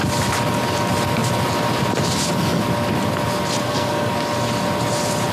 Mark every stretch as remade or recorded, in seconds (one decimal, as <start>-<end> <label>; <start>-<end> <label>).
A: 0.0-3.6 recorded; 3.6-4.1 remade; 4.1-5.3 recorded